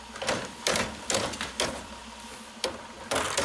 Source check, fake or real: real